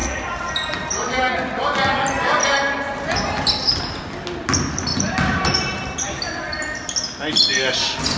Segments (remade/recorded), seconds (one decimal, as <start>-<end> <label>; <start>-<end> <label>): 0.0-8.2 recorded